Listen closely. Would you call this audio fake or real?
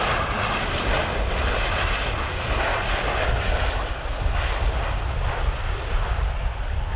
real